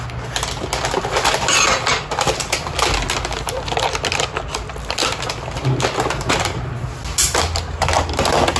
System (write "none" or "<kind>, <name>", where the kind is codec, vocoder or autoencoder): none